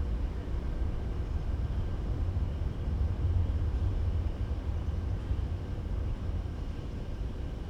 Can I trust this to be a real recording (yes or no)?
yes